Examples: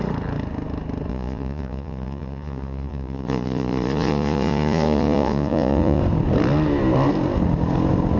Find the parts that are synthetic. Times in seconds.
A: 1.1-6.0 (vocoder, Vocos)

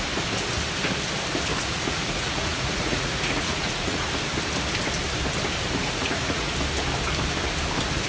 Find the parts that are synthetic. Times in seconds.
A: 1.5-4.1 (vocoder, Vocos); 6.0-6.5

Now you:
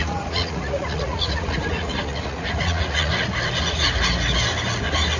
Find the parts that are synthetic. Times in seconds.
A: 0.0-3.1 (vocoder, Vocos)